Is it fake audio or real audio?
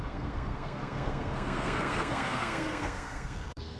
fake